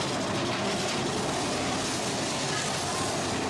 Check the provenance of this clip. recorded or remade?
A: recorded